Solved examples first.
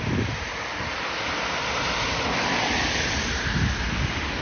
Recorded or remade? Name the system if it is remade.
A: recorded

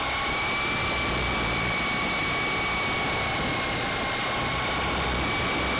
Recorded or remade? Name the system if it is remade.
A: recorded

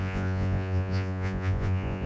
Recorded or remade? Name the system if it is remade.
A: remade, vocoder, Vocos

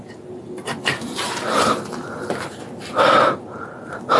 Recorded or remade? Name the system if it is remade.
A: recorded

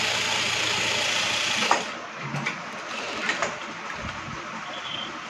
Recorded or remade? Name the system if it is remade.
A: recorded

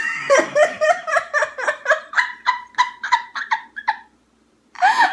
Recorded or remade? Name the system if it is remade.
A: remade, vocoder, BigVGAN v2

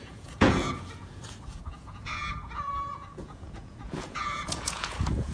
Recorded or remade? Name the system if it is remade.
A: remade, vocoder, Vocos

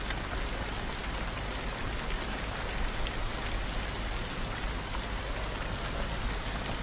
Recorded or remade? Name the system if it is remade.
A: recorded